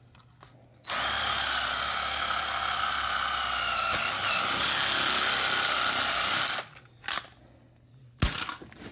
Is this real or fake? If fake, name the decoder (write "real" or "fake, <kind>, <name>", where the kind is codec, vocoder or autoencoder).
real